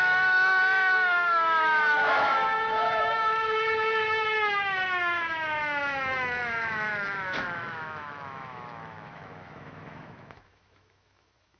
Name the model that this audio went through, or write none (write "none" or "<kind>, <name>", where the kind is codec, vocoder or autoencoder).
autoencoder, DAC-VAE